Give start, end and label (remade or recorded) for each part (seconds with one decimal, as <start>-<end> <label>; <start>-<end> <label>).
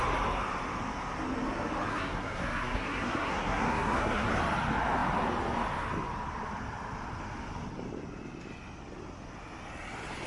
0.0-1.9 recorded; 1.9-4.3 remade; 4.3-10.3 recorded